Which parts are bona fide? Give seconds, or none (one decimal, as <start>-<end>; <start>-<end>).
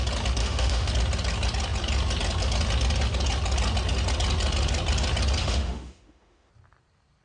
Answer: 0.0-0.4; 0.9-5.4; 6.5-7.2